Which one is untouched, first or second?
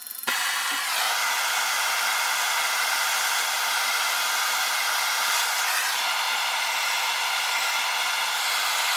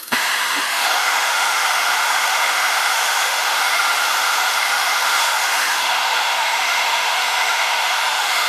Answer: first